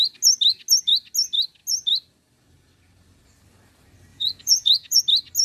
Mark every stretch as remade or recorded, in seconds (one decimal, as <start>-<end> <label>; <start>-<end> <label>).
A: 0.0-4.1 recorded; 4.1-5.0 remade; 5.0-5.4 recorded